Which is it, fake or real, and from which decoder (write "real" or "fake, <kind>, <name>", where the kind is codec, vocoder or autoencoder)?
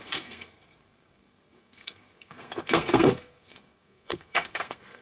fake, codec, SNAC